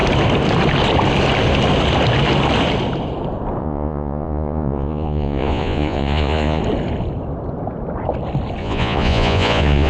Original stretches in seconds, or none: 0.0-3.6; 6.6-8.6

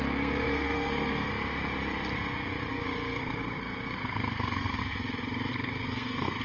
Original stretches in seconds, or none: 1.3-2.7; 4.8-5.5

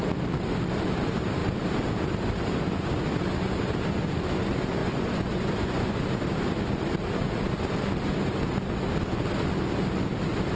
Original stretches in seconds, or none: 0.0-4.8; 6.0-10.6